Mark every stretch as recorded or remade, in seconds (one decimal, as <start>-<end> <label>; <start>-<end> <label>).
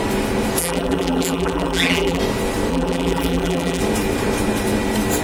0.0-0.6 recorded; 0.6-2.2 remade; 2.2-2.7 recorded; 2.7-3.8 remade; 3.8-5.2 recorded